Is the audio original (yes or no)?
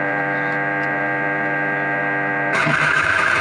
no